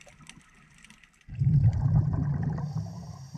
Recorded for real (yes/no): yes